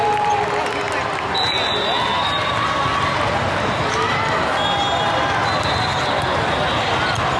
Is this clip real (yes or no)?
yes